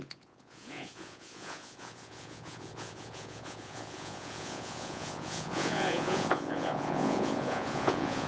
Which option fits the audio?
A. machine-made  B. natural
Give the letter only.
A